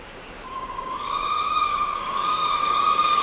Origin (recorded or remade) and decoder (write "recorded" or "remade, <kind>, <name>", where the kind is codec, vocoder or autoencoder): remade, codec, DAC